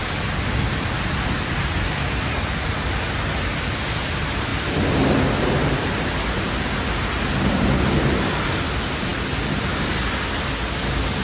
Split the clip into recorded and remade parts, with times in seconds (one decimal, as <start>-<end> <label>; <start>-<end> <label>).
0.0-11.2 recorded